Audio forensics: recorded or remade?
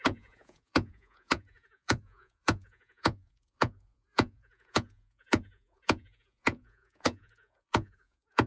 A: remade